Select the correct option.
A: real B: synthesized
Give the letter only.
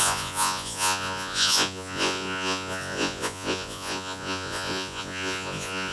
B